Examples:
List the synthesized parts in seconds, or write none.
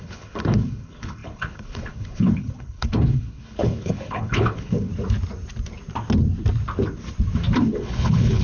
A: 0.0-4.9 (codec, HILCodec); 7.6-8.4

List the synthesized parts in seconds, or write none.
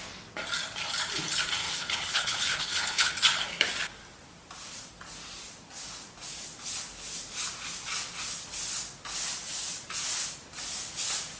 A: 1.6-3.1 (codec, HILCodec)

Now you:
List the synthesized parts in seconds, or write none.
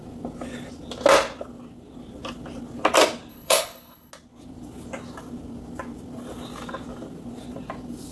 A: 3.3-4.1 (codec, HILCodec)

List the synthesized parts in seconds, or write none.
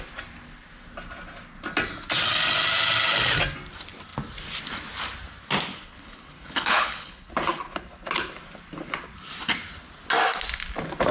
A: 5.7-7.3 (codec, HILCodec)